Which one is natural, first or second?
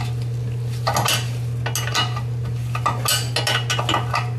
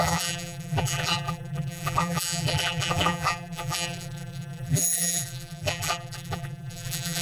first